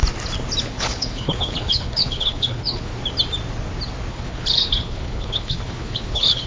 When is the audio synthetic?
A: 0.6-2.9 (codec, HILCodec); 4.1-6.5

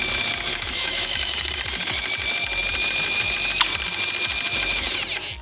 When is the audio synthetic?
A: 0.5-1.5 (autoencoder, DAC-VAE)

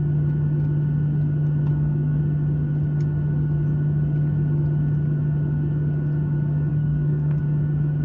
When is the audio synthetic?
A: 1.7-2.2 (codec, SNAC); 6.7-7.4

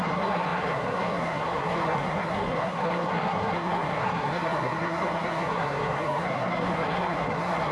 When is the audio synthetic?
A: 0.0-7.7 (codec, SNAC)

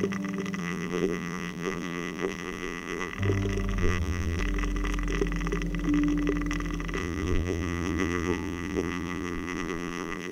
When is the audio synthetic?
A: 0.6-3.1 (vocoder, BigVGAN v2); 3.8-4.4; 7.0-10.3

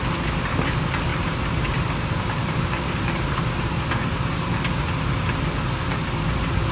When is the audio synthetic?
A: 1.1-5.1 (vocoder, BigVGAN v2)